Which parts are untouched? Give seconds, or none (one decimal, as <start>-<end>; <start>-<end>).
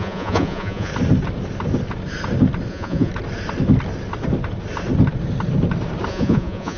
0.9-2.7; 3.1-6.1